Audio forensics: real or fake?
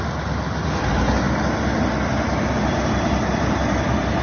real